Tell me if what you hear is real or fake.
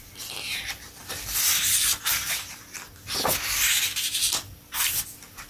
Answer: real